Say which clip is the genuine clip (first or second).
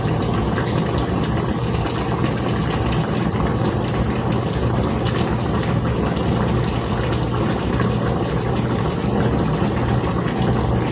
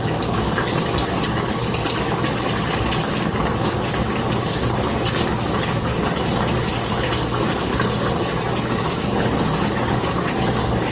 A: first